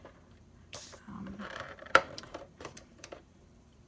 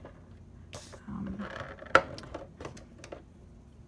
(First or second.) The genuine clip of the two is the second